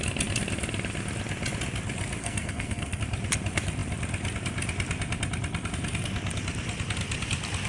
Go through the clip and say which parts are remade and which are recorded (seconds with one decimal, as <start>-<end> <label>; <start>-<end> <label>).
0.0-2.2 recorded; 2.2-3.0 remade; 3.0-7.7 recorded